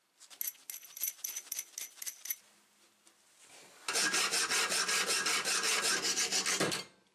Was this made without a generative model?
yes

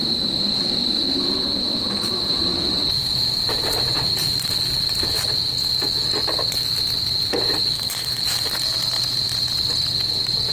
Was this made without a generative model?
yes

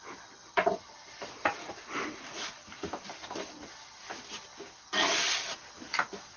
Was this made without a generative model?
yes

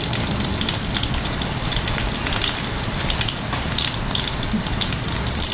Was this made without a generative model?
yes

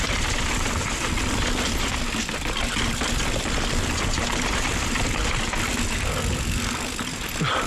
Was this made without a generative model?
no